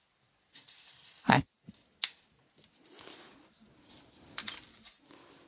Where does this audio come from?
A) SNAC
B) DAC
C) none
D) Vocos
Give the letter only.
C